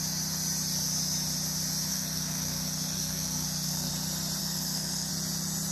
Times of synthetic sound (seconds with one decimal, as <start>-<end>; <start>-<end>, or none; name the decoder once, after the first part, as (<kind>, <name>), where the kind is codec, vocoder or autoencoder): 1.9-3.9 (codec, SNAC); 4.4-5.1